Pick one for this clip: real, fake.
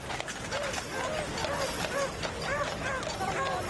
real